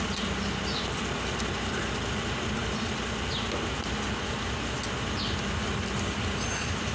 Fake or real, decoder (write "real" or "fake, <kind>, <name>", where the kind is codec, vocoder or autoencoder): real